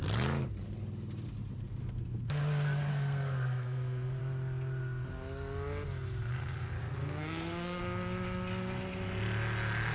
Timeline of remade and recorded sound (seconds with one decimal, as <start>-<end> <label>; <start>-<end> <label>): 0.0-1.8 recorded; 1.8-2.4 remade; 2.4-2.9 recorded; 2.9-4.2 remade; 4.2-6.8 recorded; 6.8-7.8 remade; 7.8-9.9 recorded